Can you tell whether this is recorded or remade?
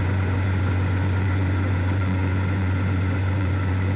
remade